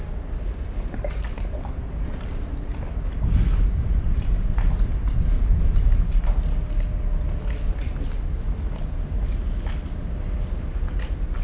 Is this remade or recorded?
recorded